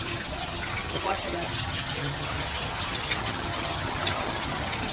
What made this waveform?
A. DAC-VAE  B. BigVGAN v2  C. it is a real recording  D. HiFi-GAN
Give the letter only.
D